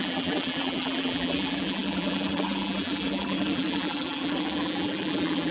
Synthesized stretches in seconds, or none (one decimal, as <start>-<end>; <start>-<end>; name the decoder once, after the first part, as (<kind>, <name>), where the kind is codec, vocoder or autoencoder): 0.0-5.5 (vocoder, BigVGAN v2)

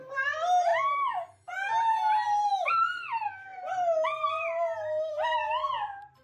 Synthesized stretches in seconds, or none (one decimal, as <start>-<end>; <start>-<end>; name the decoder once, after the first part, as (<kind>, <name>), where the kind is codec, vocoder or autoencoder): none